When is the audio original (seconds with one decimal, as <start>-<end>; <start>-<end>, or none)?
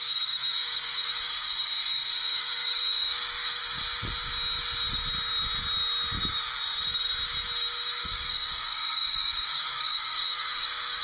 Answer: 3.6-8.0